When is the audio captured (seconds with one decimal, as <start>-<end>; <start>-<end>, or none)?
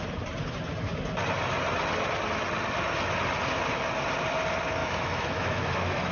0.0-4.8